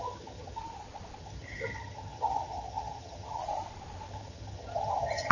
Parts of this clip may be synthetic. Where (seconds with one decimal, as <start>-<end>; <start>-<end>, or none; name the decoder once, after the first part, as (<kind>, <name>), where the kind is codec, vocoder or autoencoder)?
0.0-0.6 (vocoder, HiFi-GAN); 1.2-3.4; 4.1-5.3